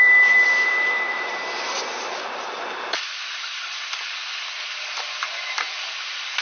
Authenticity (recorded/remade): remade